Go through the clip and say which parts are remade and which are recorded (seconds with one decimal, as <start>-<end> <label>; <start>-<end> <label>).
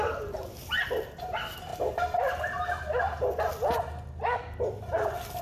0.0-5.4 recorded